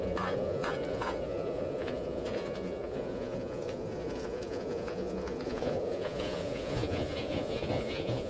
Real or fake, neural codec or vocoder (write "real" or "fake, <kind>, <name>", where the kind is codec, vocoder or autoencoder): fake, vocoder, Vocos